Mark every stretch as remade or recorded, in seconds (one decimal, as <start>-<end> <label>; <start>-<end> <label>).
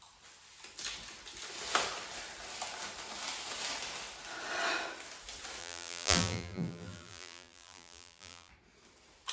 0.0-5.6 recorded; 5.6-8.5 remade; 8.5-9.3 recorded